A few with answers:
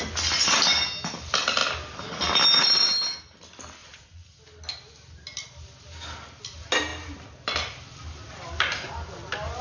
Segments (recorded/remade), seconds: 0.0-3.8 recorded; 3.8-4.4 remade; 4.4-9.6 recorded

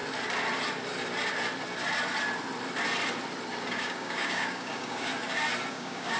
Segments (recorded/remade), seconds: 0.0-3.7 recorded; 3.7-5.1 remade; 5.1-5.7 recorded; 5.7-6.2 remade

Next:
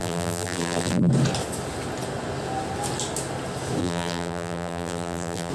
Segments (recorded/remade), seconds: 0.0-1.1 remade; 1.1-3.8 recorded; 3.8-5.5 remade

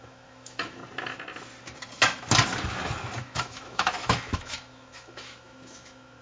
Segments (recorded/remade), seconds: 0.0-0.8 remade; 0.8-3.2 recorded; 3.2-6.2 remade